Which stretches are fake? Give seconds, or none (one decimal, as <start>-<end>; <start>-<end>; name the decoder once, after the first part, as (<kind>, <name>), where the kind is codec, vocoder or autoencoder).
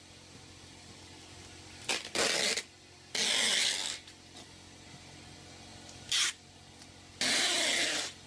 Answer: none